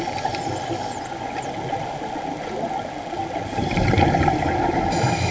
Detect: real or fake real